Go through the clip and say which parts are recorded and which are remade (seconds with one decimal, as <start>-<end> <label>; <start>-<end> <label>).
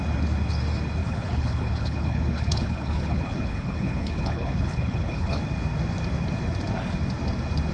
0.0-1.0 recorded; 1.0-5.4 remade; 5.4-7.7 recorded